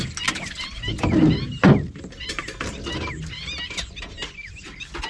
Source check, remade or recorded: recorded